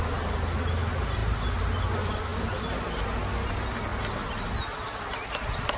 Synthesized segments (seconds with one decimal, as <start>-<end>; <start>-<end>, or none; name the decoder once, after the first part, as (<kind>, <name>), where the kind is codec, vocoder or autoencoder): none